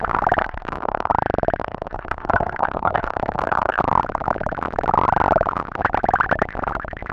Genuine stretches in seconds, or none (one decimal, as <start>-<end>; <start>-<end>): 0.0-0.4; 1.1-1.6; 3.8-7.1